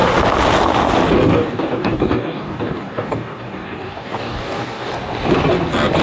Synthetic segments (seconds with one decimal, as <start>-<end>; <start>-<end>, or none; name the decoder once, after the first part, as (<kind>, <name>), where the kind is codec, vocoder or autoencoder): 1.3-4.9 (codec, DAC)